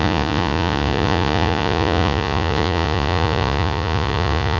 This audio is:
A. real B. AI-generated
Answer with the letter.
B